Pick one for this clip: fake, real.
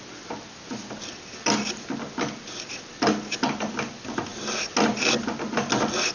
real